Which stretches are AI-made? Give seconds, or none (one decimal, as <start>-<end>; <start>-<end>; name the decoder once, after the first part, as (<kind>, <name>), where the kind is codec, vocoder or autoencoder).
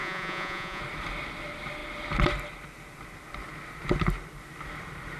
0.0-0.8 (vocoder, Vocos)